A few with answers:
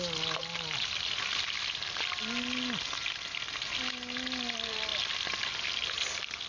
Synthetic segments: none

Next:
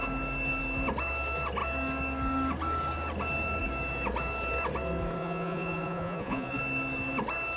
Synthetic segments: 5.2-6.6 (vocoder, Vocos)

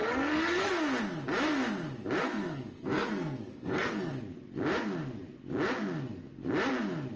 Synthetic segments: 0.0-0.7 (codec, SNAC); 2.2-4.1

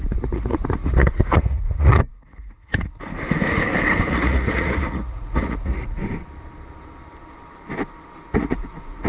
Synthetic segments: 0.0-2.9 (vocoder, Vocos); 4.1-6.0; 8.3-9.1

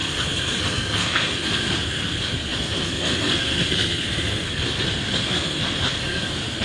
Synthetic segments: 0.0-6.6 (codec, SNAC)

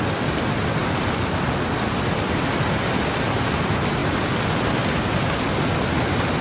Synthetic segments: none

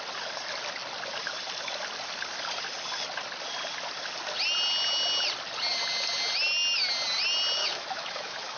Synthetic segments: 7.6-8.6 (autoencoder, DAC-VAE)

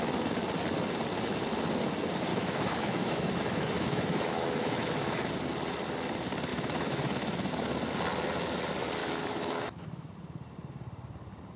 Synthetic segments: 2.3-5.3 (autoencoder, DAC-VAE); 6.5-7.5; 9.0-10.1